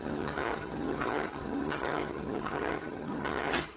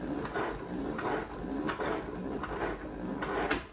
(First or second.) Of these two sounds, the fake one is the first